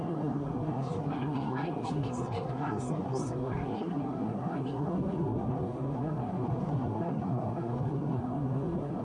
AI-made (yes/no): yes